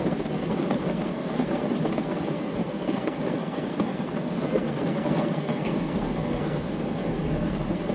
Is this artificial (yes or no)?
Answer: yes